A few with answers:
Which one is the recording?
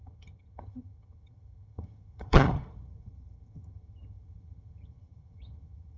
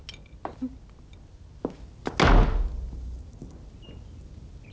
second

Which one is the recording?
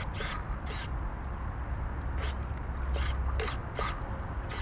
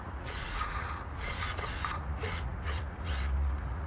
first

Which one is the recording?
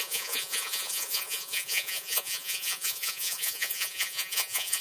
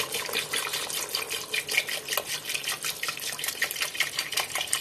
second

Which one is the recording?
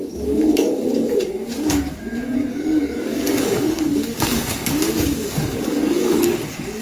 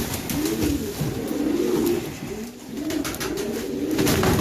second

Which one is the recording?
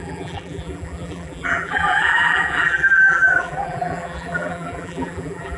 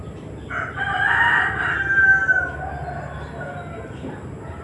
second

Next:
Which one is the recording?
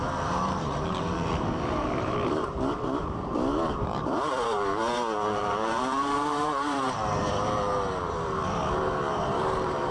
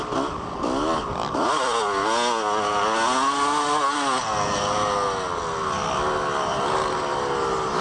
second